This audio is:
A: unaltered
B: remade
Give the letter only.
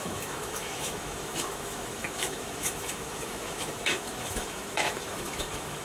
B